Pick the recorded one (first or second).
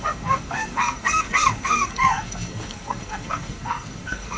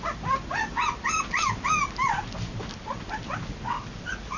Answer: second